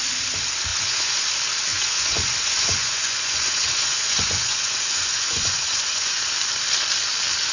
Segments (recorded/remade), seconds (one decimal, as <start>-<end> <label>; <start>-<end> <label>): 0.0-0.7 recorded; 0.7-1.2 remade; 1.2-1.7 recorded; 1.7-6.2 remade; 6.2-7.5 recorded